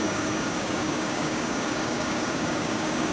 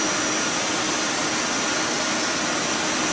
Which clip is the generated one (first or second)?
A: first